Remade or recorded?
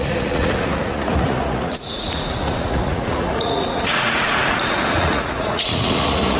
remade